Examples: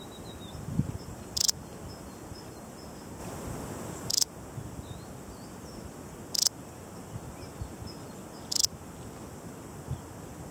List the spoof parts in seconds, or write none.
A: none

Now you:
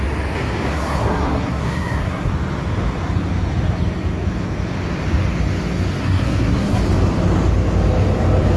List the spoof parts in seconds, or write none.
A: 0.7-2.3; 6.0-6.8

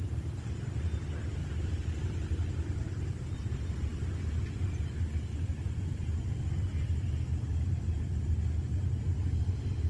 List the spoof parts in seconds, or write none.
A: none

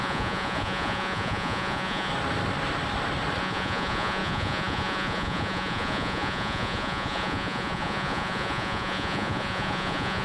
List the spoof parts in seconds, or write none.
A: 0.0-2.1; 3.4-10.2

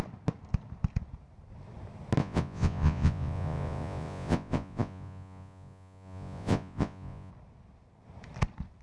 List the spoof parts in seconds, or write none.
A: 2.2-7.3

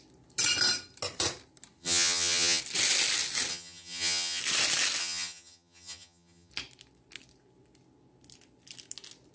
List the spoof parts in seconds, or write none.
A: 1.8-2.6; 3.5-4.4; 5.0-6.5

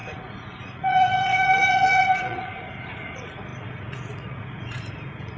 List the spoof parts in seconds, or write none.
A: 0.0-5.4